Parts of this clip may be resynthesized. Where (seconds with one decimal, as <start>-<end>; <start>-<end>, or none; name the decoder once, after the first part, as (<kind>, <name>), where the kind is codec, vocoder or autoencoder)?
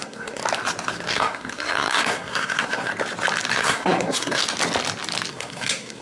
0.0-0.4 (codec, SNAC); 1.1-2.9; 3.5-4.4; 5.3-6.0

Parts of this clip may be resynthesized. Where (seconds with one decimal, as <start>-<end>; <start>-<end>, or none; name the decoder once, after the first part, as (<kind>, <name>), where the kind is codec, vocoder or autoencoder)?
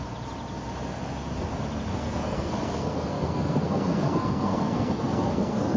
1.9-5.8 (codec, SNAC)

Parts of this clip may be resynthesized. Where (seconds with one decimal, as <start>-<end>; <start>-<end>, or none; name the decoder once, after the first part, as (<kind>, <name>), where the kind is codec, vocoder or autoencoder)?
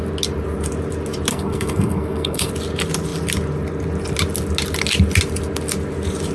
1.3-2.5 (codec, SNAC)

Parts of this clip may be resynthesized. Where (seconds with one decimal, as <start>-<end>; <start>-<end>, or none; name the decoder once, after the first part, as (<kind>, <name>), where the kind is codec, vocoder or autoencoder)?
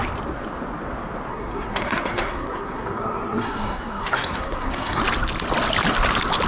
1.3-5.0 (codec, SNAC)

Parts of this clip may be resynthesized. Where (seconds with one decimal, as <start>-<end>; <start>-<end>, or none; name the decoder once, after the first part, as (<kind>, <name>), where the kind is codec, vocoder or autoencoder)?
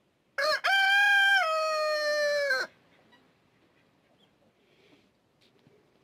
none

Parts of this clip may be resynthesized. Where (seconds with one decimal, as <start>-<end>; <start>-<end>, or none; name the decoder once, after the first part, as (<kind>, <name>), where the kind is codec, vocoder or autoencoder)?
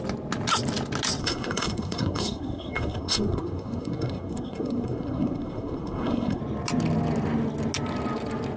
1.2-6.4 (codec, SNAC)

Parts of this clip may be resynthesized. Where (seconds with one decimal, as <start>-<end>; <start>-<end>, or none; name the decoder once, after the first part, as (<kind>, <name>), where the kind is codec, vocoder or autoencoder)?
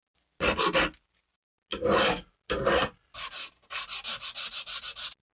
none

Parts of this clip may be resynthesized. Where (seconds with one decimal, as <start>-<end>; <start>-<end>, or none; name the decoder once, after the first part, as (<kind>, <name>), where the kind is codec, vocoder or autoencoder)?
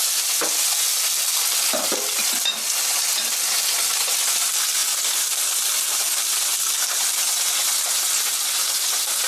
none